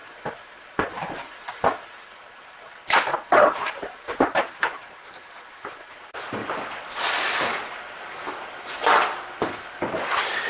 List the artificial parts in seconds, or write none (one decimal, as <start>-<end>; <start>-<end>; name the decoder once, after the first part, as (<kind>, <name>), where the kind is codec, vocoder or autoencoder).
4.6-6.4 (vocoder, BigVGAN v2); 7.0-7.5